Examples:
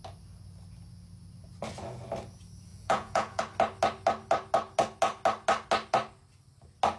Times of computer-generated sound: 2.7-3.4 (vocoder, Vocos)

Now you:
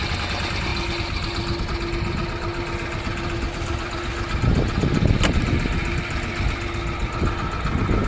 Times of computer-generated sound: none